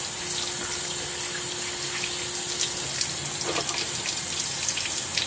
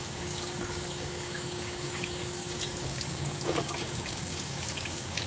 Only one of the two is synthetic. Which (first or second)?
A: second